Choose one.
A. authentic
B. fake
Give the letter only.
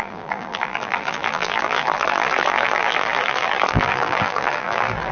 B